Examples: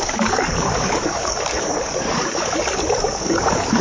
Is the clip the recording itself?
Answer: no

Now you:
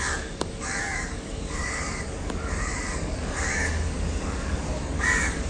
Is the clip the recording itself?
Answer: no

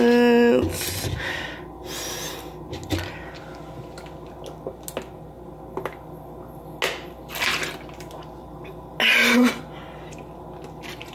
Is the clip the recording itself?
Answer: yes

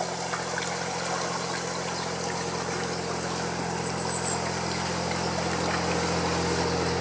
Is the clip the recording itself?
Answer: yes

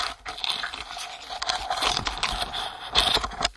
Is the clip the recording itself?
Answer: yes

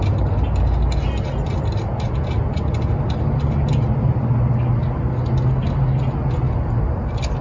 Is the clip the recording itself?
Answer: yes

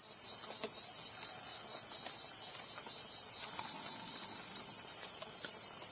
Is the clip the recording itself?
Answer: yes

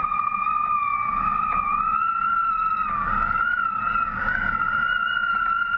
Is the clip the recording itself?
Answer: yes